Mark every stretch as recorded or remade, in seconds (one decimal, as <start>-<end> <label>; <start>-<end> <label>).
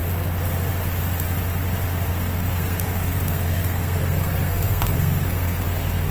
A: 0.0-2.1 recorded; 2.1-6.1 remade